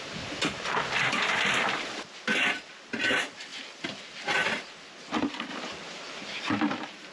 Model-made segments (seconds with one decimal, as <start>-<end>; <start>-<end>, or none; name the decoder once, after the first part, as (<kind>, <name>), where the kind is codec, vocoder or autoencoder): 5.5-6.5 (vocoder, BigVGAN v2)